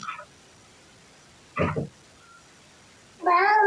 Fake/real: real